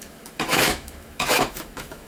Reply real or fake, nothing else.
fake